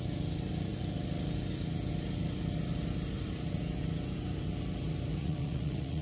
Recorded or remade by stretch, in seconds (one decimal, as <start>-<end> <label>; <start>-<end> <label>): 0.0-5.2 recorded; 5.2-6.0 remade